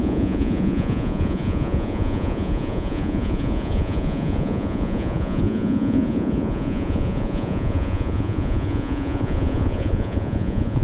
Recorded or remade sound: remade